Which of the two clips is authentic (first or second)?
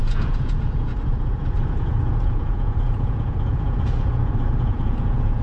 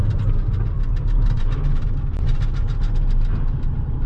second